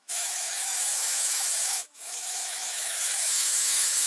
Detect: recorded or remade remade